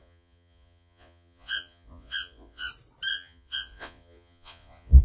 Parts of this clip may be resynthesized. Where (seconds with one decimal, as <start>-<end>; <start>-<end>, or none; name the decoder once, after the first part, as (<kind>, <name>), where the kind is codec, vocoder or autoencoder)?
0.0-2.7 (vocoder, Vocos); 3.1-5.0